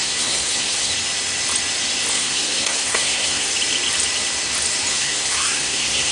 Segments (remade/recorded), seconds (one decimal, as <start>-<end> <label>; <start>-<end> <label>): 0.0-0.9 remade; 0.9-2.1 recorded; 2.1-3.5 remade; 3.5-4.9 recorded; 4.9-6.1 remade